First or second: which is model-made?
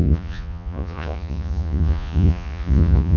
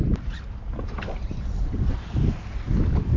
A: first